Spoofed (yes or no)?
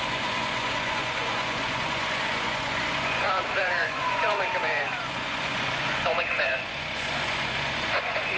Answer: yes